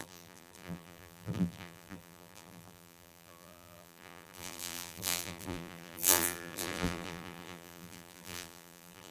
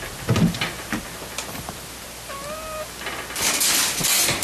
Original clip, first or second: second